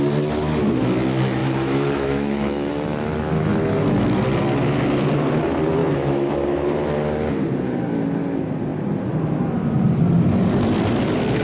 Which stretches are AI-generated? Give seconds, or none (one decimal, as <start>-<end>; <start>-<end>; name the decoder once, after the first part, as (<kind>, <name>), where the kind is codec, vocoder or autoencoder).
1.4-2.7 (autoencoder, DAC-VAE); 5.8-6.3